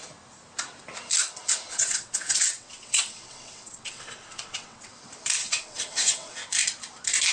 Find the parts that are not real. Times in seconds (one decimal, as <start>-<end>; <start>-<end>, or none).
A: 1.7-4.9; 5.4-6.3